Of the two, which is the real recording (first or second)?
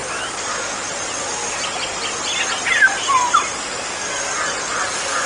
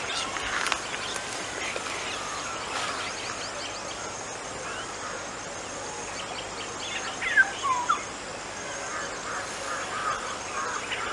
second